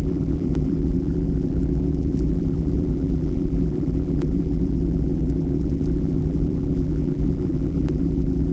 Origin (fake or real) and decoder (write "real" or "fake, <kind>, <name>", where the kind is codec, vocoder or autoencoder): fake, vocoder, BigVGAN v2